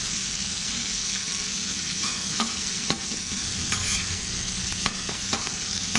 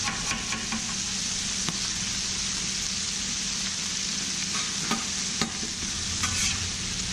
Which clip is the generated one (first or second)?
first